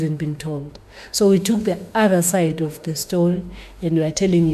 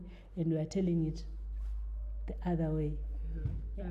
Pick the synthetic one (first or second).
first